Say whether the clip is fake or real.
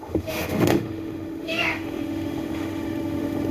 fake